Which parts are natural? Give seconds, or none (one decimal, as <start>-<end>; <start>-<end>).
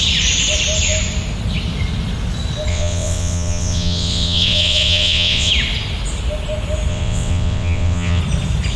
0.0-2.7; 5.5-6.9; 8.2-8.8